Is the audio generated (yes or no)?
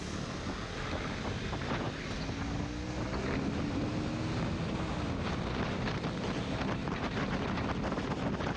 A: no